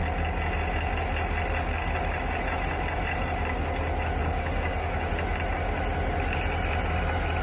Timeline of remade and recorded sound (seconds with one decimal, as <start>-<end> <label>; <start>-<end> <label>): 0.0-4.2 recorded; 4.2-5.1 remade; 5.1-7.4 recorded